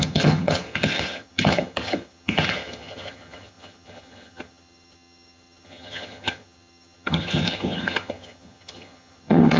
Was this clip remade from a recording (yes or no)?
yes